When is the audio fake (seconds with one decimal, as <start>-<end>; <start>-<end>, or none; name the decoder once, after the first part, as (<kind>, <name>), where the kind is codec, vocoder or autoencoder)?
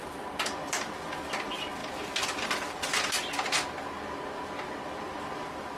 0.0-1.8 (vocoder, BigVGAN v2); 5.0-5.8